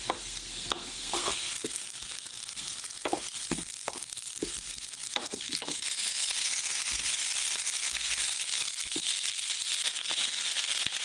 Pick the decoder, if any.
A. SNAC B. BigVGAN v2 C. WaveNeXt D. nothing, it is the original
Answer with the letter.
A